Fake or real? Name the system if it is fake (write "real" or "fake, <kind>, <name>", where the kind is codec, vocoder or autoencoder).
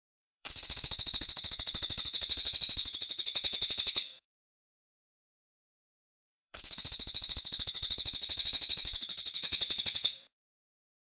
fake, codec, SNAC